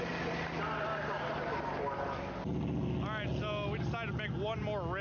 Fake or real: real